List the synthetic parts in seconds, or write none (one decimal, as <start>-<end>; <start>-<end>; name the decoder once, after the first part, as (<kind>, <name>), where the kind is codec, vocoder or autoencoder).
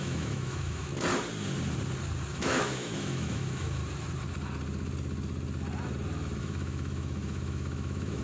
0.0-0.9 (autoencoder, DAC-VAE); 2.3-3.8; 6.4-8.2